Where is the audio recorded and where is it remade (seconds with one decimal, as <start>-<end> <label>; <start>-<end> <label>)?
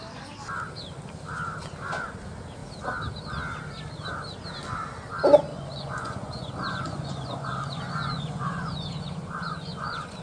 0.0-5.5 recorded; 5.5-10.2 remade